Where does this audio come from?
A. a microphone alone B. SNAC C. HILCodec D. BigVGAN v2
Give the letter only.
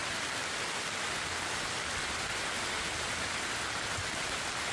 A